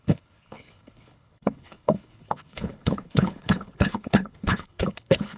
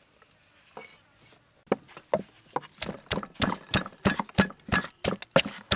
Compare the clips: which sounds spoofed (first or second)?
first